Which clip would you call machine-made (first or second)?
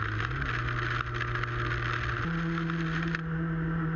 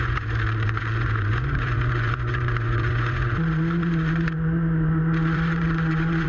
second